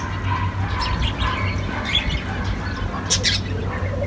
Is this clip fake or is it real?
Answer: real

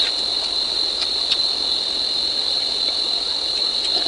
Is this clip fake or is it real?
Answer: real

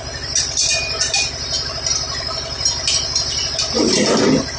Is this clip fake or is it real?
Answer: real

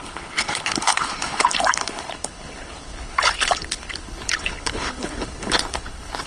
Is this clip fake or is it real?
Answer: fake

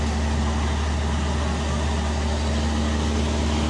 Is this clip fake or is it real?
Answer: real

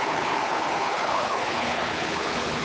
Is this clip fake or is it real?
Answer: fake